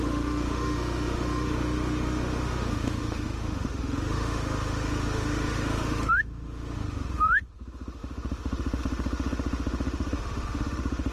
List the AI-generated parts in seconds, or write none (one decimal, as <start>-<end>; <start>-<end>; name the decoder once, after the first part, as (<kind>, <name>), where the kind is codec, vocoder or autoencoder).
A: 0.0-11.1 (autoencoder, DAC-VAE)

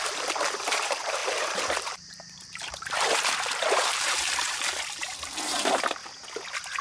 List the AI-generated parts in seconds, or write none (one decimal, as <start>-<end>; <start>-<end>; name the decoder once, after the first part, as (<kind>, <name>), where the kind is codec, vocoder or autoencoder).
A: 0.0-6.0 (vocoder, BigVGAN v2)

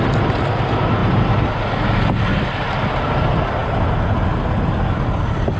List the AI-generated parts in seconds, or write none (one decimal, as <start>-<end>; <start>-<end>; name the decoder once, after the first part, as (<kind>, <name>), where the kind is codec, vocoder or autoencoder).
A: none

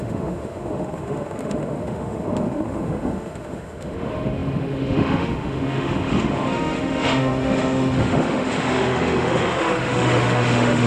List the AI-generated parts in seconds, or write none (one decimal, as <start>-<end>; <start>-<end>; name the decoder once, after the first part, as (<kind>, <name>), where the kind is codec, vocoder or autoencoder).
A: 0.0-10.9 (autoencoder, DAC-VAE)

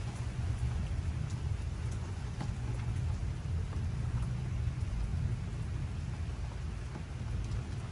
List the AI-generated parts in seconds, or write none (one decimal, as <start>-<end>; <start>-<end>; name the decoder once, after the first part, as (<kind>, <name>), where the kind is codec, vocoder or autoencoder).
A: 0.0-0.8 (vocoder, Vocos); 1.7-3.2; 4.1-5.1

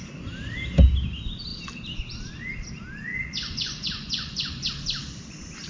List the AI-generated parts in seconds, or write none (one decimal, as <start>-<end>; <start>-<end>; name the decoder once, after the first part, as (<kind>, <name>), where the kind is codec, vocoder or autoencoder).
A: 3.1-4.7 (vocoder, Vocos)